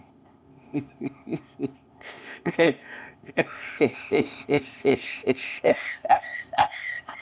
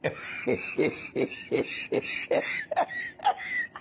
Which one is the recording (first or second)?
second